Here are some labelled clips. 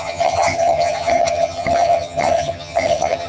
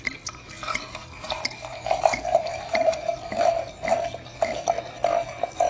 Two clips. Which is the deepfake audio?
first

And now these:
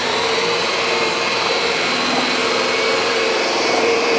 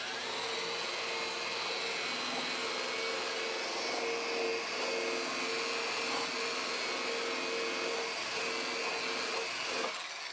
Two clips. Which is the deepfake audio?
first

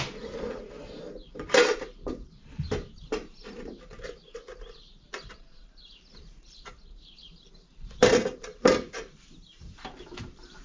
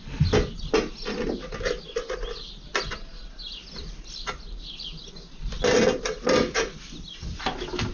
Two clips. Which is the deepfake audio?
first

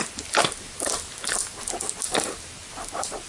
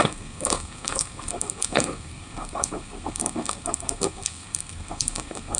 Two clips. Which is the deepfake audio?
second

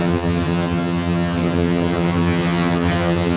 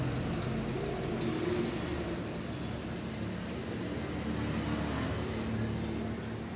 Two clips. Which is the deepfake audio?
first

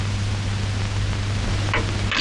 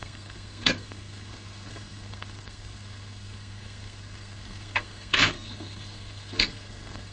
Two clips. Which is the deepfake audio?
second